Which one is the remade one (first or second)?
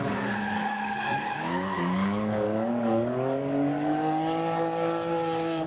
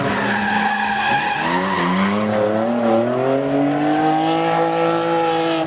first